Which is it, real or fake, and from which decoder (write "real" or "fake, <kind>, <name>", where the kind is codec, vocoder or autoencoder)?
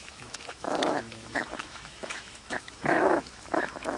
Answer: fake, autoencoder, DAC-VAE